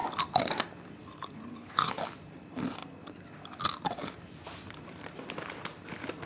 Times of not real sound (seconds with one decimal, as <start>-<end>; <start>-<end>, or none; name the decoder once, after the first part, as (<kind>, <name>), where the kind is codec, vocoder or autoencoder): 1.5-2.0 (codec, HILCodec)